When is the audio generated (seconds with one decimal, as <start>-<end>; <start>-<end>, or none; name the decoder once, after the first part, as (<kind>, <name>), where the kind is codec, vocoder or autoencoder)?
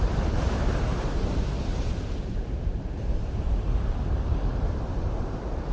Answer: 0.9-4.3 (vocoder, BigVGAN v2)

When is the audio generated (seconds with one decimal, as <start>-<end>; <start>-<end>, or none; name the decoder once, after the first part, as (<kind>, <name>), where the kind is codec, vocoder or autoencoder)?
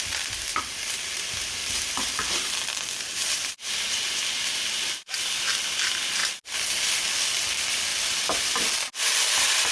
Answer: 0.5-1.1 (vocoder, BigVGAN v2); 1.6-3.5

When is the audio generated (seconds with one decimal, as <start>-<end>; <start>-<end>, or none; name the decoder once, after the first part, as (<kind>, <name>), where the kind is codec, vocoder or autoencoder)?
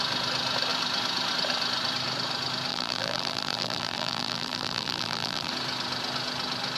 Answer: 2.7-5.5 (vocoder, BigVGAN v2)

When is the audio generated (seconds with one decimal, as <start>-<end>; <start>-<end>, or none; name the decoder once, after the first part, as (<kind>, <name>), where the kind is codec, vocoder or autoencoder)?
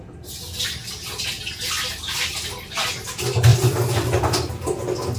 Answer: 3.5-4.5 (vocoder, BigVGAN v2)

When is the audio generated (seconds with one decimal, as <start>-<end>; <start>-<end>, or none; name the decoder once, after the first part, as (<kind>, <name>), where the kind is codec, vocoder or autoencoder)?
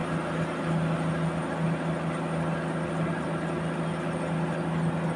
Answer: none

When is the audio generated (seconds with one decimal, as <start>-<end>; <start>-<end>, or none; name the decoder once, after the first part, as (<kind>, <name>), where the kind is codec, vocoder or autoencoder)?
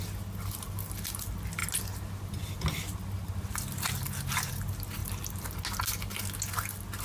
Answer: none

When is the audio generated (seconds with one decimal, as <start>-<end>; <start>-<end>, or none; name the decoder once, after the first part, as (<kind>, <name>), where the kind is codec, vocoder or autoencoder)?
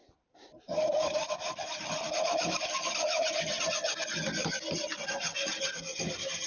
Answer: 0.0-3.6 (vocoder, BigVGAN v2)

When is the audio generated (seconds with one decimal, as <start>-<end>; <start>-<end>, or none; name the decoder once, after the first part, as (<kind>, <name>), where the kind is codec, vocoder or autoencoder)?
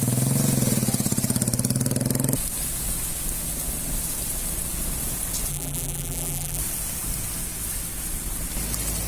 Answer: 5.5-6.6 (vocoder, BigVGAN v2)